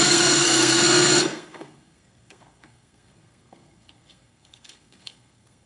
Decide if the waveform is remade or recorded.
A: remade